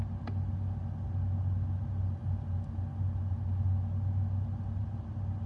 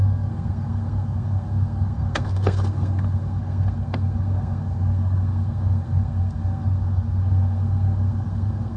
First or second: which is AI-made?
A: second